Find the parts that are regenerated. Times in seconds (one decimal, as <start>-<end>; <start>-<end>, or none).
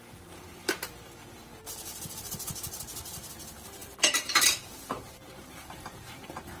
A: 0.0-6.6